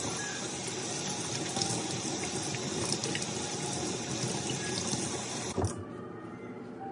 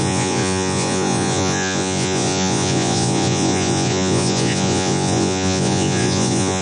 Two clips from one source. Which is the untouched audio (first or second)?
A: first